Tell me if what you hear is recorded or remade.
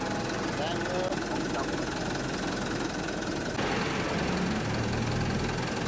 recorded